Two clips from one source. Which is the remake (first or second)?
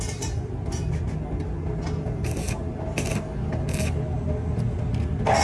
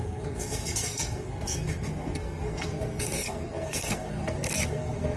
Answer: second